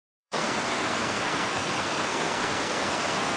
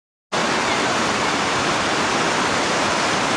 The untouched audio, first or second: second